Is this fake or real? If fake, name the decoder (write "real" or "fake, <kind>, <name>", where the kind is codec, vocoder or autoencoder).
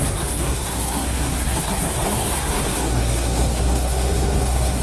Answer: fake, codec, SNAC